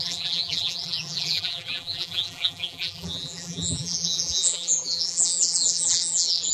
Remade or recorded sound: remade